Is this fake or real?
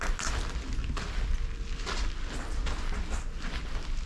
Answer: real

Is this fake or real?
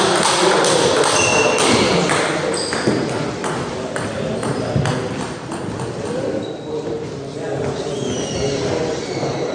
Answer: real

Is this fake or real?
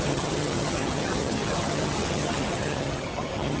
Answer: fake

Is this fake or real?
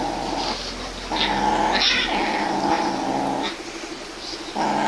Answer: real